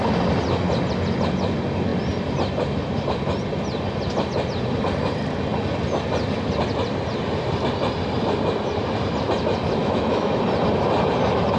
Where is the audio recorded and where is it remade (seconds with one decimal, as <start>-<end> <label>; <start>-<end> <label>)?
0.0-9.8 recorded; 9.8-10.4 remade; 10.4-11.6 recorded